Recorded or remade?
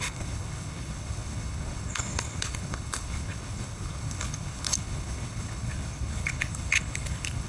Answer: remade